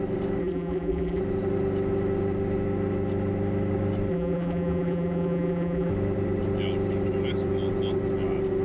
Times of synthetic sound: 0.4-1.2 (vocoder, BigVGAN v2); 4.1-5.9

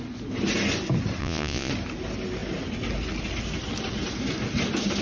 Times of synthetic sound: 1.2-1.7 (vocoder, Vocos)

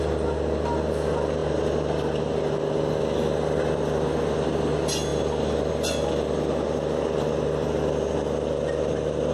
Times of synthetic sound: none